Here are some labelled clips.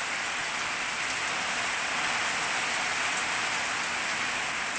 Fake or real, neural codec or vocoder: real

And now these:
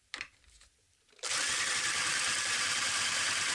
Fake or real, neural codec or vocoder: fake, vocoder, BigVGAN v2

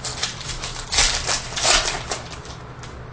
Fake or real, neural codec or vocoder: real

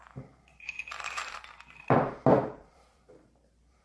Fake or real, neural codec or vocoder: fake, vocoder, BigVGAN v2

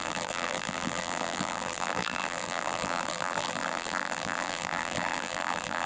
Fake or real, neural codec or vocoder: fake, vocoder, BigVGAN v2